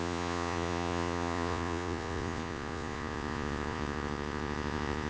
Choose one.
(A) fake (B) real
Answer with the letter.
A